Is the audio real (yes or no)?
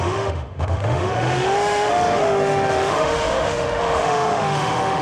no